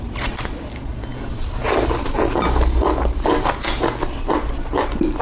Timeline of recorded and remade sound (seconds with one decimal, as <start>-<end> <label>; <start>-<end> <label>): 0.0-5.2 recorded